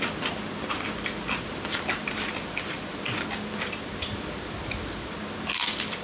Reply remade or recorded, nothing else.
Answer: recorded